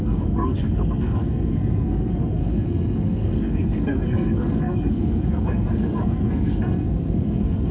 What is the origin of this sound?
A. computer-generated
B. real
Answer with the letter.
A